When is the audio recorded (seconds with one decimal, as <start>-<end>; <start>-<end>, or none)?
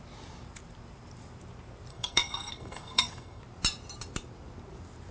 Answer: 0.0-1.9; 3.4-5.1